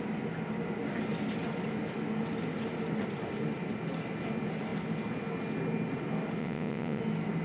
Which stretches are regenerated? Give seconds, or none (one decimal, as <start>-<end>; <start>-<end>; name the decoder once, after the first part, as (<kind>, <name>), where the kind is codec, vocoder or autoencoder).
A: 6.4-7.0 (vocoder, WaveNeXt)